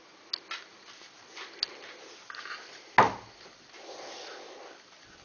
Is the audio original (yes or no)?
yes